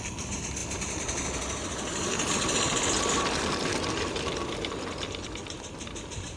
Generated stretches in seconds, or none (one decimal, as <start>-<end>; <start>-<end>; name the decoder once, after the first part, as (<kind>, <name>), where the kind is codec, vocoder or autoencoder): none